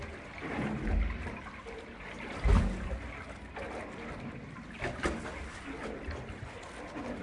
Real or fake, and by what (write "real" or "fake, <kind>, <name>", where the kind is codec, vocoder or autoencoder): real